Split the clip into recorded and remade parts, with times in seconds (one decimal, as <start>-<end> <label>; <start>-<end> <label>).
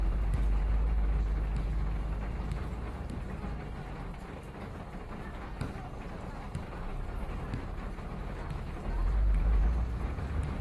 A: 0.0-10.6 remade